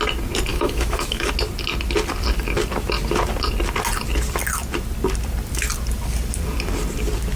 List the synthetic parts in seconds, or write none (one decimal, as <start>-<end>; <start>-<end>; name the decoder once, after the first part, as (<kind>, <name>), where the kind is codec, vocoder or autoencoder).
0.5-1.3 (autoencoder, DAC-VAE)